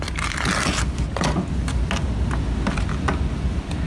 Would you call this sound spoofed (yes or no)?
no